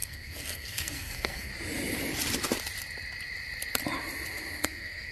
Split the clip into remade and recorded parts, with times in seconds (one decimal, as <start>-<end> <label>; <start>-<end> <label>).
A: 0.0-1.5 remade; 1.5-4.6 recorded; 4.6-5.1 remade